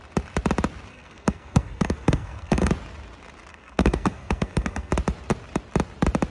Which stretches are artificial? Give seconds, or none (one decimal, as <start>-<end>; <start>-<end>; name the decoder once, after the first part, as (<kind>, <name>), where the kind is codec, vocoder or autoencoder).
0.9-2.7 (codec, SNAC); 3.5-4.9